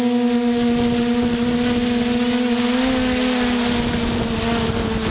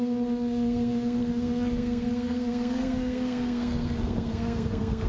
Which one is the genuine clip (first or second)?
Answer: first